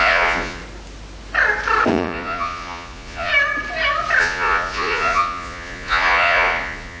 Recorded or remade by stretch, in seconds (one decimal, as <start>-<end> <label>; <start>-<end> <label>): 0.0-0.6 remade; 0.6-1.9 recorded; 1.9-3.3 remade; 3.3-4.2 recorded; 4.2-7.0 remade